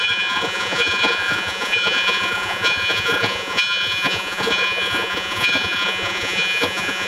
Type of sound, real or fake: fake